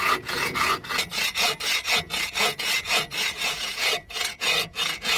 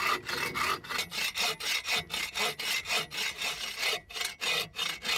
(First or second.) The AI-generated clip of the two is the first